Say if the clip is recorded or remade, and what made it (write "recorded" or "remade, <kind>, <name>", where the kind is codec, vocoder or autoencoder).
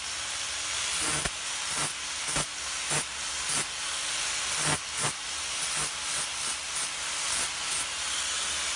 recorded